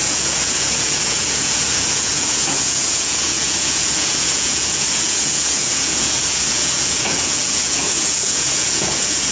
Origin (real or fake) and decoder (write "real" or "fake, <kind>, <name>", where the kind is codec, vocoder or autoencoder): fake, vocoder, Vocos